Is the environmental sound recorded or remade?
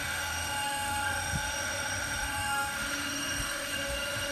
remade